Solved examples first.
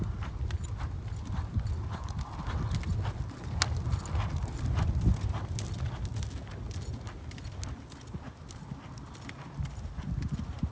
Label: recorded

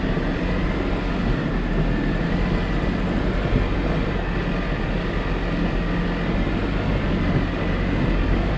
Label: recorded